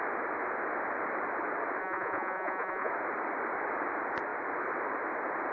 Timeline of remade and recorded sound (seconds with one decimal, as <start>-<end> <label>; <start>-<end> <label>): 0.0-1.8 recorded; 1.8-2.9 remade; 2.9-5.5 recorded